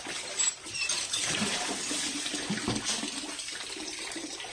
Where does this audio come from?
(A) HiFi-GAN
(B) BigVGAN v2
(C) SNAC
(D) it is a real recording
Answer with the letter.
B